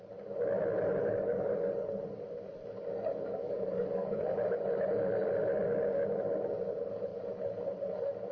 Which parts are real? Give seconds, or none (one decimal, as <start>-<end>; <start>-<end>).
0.0-1.0; 1.9-3.1; 4.2-8.3